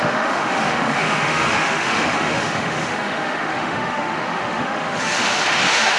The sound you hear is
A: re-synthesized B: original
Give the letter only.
A